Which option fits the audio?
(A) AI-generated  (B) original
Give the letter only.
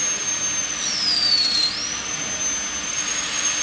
B